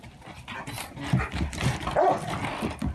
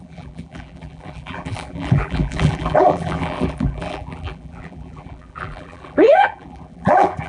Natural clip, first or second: first